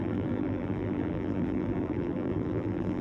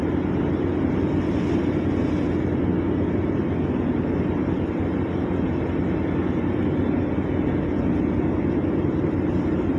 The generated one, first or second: first